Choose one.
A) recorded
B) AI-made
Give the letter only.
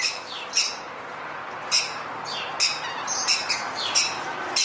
A